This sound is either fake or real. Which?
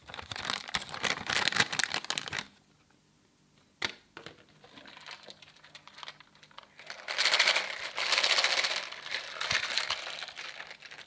real